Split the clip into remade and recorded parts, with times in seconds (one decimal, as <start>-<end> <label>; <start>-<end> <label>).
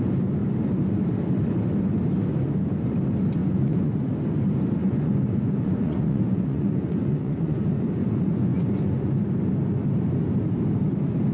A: 0.0-3.4 recorded; 3.4-4.0 remade; 4.0-4.8 recorded; 4.8-7.6 remade; 7.6-8.0 recorded; 8.0-9.2 remade; 9.2-11.3 recorded